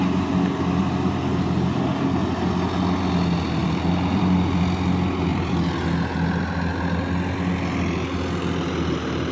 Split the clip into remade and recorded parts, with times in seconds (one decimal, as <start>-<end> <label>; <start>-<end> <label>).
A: 0.0-3.6 recorded; 3.6-4.6 remade; 4.6-5.3 recorded; 5.3-5.8 remade; 5.8-9.3 recorded